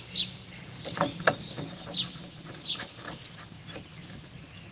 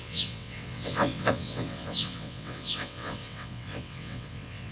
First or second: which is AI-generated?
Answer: second